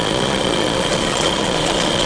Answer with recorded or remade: remade